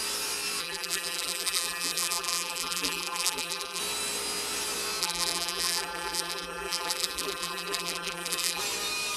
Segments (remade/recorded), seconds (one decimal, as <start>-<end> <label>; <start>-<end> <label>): 0.0-0.6 recorded; 0.6-3.8 remade; 3.8-5.0 recorded; 5.0-8.6 remade; 8.6-9.2 recorded